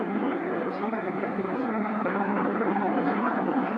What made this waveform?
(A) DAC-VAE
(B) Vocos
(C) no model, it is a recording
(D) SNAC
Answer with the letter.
D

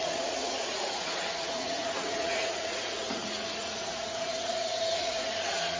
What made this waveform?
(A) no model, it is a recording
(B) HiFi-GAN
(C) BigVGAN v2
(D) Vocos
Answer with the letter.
D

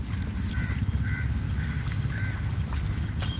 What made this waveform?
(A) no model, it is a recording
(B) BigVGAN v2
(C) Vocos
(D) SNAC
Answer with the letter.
A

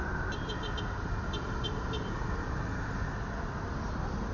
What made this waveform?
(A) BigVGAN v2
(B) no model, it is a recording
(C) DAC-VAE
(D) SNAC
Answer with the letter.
B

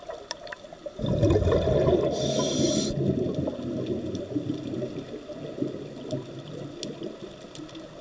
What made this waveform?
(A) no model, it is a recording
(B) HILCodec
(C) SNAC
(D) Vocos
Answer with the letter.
A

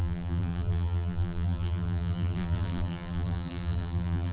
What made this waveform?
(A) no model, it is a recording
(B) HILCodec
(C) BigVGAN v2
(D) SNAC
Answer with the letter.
C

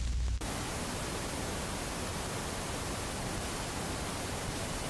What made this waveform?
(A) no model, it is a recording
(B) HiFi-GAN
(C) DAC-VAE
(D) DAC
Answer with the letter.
A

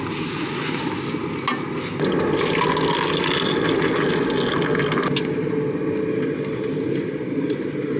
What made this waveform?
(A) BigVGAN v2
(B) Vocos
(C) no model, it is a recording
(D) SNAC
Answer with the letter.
C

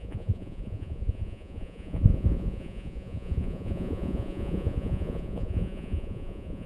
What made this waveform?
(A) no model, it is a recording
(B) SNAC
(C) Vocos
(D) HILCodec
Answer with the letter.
C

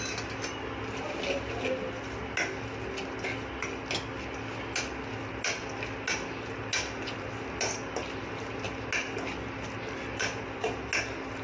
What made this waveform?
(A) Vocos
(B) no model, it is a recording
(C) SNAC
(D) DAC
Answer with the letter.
B